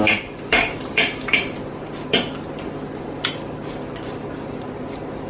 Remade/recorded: remade